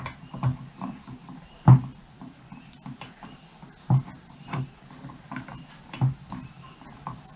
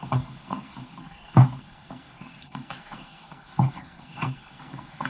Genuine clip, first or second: first